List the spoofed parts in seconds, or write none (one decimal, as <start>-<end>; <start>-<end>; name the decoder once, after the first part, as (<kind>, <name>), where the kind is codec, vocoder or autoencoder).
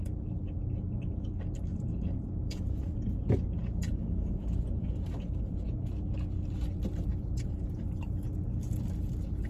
1.7-5.1 (vocoder, Vocos); 7.1-7.8